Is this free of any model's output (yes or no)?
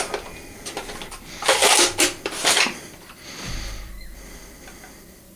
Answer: no